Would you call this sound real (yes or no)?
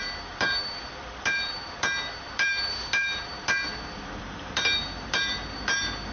no